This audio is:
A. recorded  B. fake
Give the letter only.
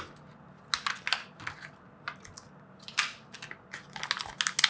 A